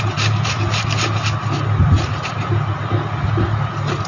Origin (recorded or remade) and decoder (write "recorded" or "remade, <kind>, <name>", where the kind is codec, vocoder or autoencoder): recorded